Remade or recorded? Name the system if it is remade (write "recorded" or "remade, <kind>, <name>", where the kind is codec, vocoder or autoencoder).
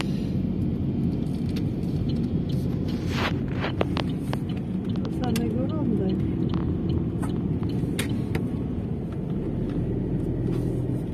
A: recorded